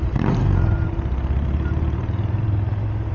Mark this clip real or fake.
fake